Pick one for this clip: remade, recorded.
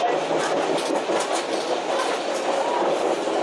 recorded